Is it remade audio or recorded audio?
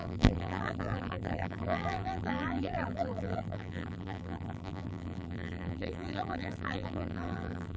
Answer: remade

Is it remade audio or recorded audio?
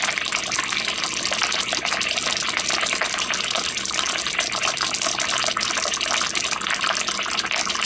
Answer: recorded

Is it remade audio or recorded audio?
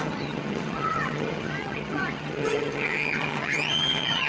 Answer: remade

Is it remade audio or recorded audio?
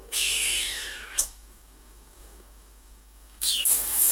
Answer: remade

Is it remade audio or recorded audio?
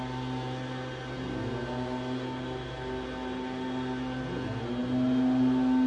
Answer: recorded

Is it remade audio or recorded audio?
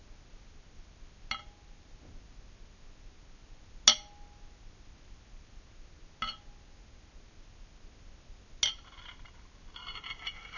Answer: recorded